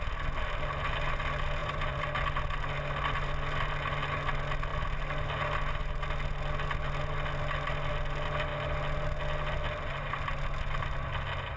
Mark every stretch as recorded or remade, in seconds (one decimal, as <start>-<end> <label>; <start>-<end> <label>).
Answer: 0.0-1.6 recorded; 1.6-2.2 remade; 2.2-11.6 recorded